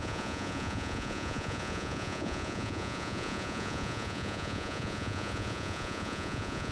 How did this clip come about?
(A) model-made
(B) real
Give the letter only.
A